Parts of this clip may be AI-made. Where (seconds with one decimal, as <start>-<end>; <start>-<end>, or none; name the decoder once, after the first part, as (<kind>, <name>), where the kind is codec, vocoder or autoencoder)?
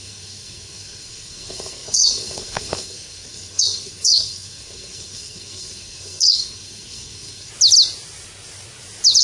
0.0-7.5 (codec, SNAC)